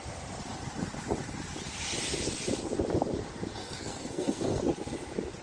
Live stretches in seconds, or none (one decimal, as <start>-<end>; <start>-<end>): 0.0-3.6; 4.6-5.4